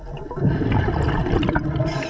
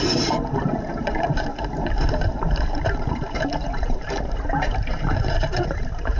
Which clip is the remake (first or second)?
second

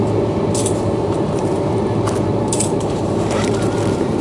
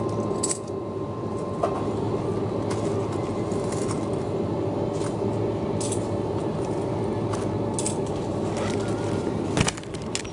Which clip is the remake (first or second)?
first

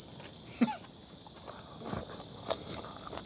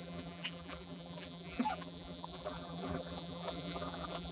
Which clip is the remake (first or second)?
second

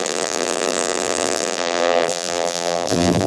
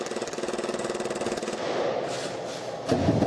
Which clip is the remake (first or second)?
first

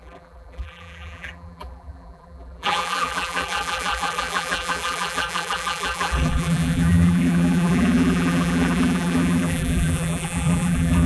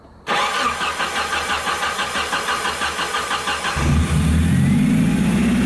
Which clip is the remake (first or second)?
first